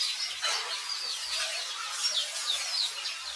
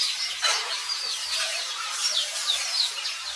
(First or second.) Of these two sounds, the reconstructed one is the second